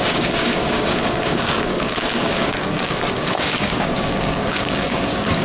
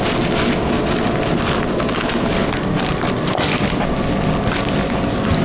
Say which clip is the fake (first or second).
first